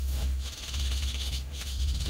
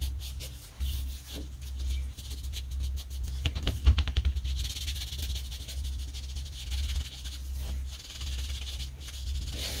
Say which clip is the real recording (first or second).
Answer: second